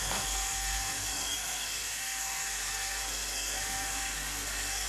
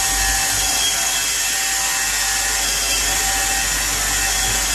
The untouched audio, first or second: second